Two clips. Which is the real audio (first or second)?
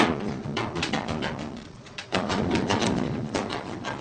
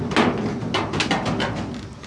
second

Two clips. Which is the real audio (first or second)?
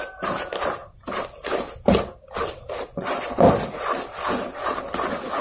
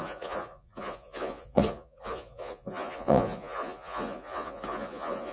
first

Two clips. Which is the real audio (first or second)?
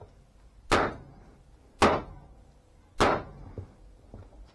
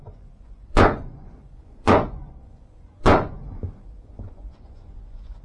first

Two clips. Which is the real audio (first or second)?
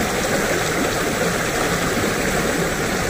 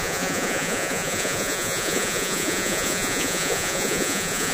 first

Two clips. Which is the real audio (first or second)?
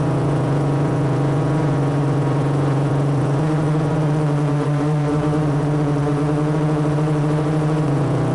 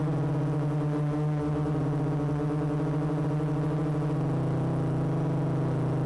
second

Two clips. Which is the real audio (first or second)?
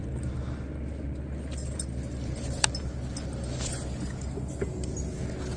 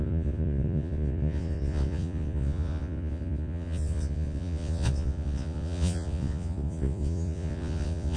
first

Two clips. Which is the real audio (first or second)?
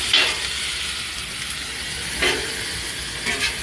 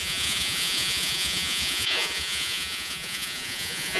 first